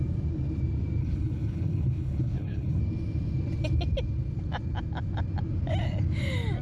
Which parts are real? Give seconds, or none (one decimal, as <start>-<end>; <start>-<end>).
0.0-1.0; 2.8-6.6